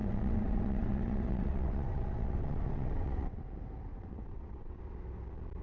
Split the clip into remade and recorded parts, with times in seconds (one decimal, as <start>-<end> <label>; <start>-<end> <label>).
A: 0.0-3.4 remade; 3.4-3.9 recorded; 3.9-4.8 remade; 4.8-5.6 recorded